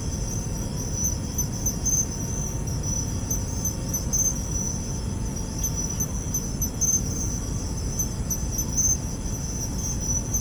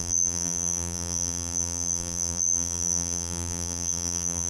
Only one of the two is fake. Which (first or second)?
second